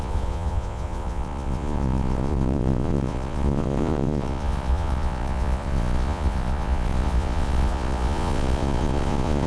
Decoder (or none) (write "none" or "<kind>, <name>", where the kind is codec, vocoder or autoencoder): vocoder, Vocos